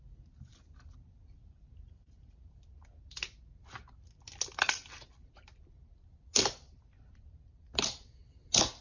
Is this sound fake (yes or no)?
no